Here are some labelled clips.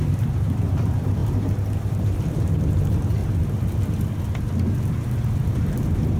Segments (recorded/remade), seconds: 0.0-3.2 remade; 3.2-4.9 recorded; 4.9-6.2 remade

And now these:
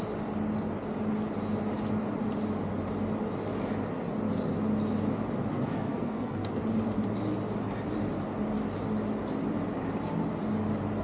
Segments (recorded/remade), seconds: 0.0-5.5 recorded; 5.5-6.6 remade; 6.6-11.0 recorded

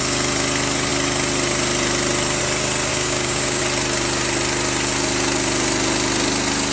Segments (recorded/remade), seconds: 0.0-2.9 recorded; 2.9-3.6 remade; 3.6-6.7 recorded

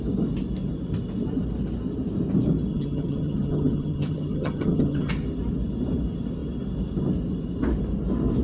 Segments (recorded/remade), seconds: 0.0-2.7 recorded; 2.7-5.1 remade; 5.1-8.4 recorded

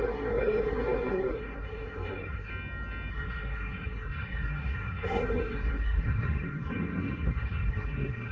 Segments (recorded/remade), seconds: 0.0-2.5 remade; 2.5-3.1 recorded; 3.1-8.3 remade